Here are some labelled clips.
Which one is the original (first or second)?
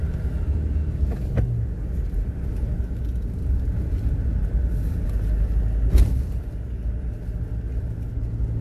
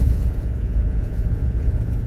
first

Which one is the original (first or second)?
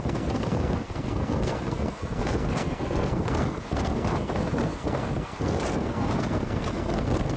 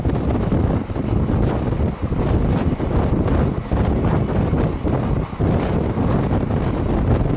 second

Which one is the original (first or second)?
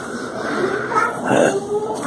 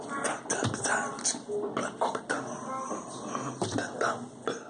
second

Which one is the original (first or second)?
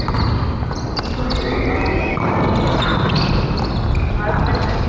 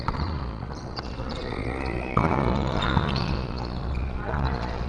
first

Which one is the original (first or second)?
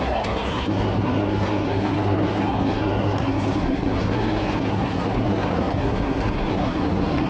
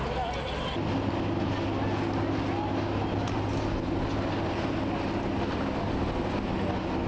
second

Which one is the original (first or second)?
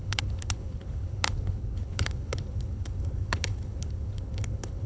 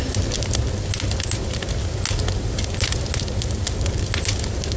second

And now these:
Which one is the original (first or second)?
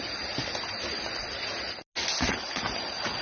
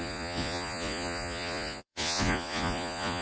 first